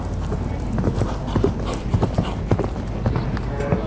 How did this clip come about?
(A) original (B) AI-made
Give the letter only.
A